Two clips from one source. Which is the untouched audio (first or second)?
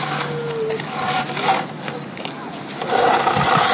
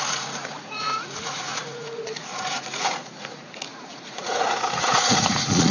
first